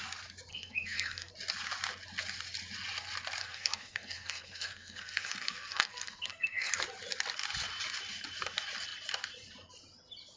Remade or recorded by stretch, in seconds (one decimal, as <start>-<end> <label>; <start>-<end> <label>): 0.0-0.5 recorded; 0.5-1.3 remade; 1.3-3.4 recorded; 3.4-6.7 remade; 6.7-10.4 recorded

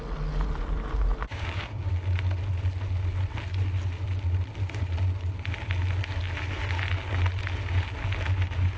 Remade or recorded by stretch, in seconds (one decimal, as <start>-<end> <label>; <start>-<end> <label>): 0.0-1.3 recorded; 1.3-1.9 remade; 1.9-8.8 recorded

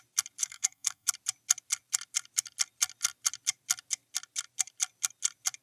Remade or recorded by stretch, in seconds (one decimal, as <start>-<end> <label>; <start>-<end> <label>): 0.0-0.4 recorded; 0.4-1.1 remade; 1.1-5.6 recorded

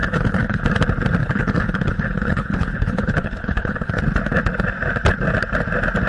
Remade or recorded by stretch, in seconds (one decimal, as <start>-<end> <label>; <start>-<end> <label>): 0.0-0.6 remade; 0.6-1.2 recorded; 1.2-4.0 remade; 4.0-6.1 recorded

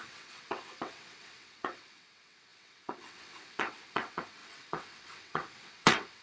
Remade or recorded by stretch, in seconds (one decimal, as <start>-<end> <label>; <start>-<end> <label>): 0.0-6.2 remade

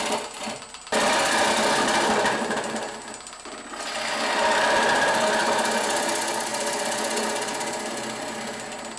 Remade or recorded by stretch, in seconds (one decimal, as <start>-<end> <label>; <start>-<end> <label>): 0.0-9.0 recorded